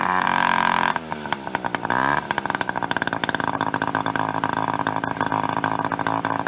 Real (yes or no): yes